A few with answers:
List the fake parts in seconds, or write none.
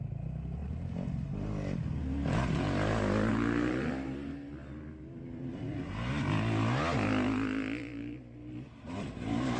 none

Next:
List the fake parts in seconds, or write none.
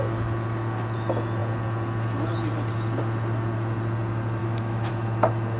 4.4-4.9 (autoencoder, DAC-VAE)